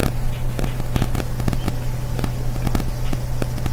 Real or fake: real